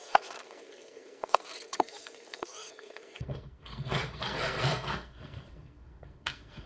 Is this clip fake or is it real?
fake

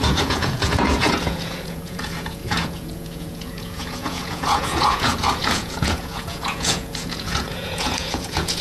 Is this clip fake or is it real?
fake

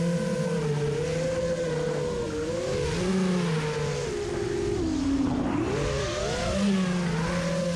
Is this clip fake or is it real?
real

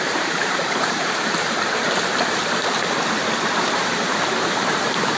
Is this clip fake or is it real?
fake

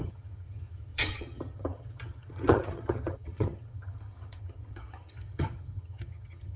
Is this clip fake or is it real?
fake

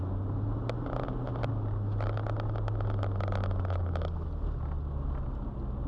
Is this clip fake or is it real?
real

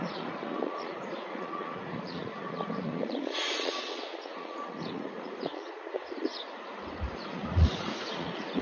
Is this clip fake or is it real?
fake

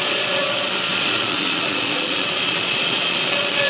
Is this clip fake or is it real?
fake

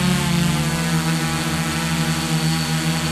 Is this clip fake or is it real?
real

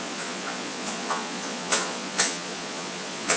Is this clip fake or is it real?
fake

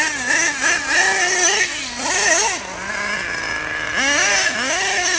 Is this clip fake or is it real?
real